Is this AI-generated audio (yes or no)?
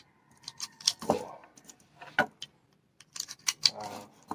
no